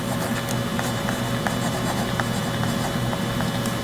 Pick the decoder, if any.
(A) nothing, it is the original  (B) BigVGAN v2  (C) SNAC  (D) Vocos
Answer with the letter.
A